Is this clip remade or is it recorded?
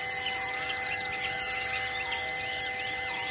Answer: recorded